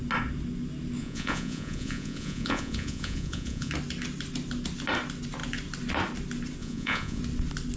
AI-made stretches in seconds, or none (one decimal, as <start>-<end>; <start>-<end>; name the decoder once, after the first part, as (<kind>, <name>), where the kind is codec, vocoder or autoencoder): 1.0-3.7 (vocoder, Vocos); 6.6-7.2